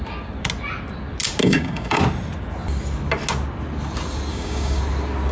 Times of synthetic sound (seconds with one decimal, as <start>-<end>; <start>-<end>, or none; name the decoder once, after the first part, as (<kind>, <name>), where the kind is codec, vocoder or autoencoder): 1.4-2.0 (codec, DAC); 4.3-4.8